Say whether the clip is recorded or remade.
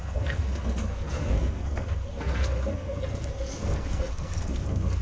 remade